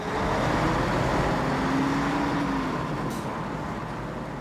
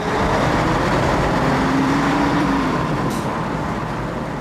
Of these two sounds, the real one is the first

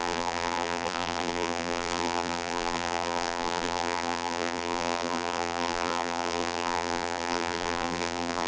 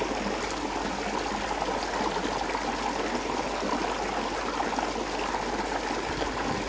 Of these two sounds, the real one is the second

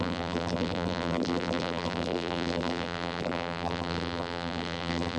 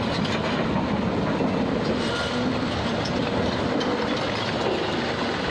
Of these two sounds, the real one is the second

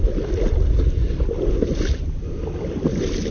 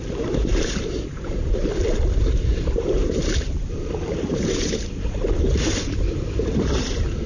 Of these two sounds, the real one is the first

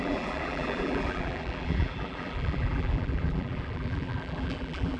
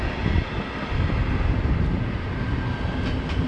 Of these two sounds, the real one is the second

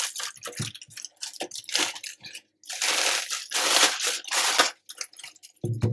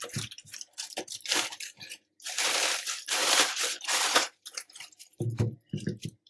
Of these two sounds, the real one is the first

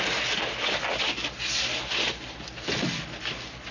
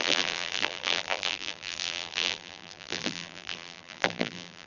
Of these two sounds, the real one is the first